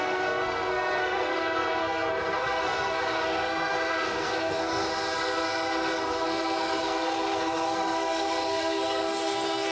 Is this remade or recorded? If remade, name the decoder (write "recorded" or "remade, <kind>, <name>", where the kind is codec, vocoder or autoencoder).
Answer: remade, codec, SNAC